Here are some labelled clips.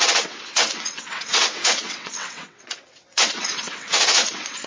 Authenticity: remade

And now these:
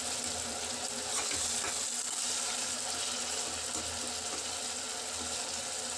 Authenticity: recorded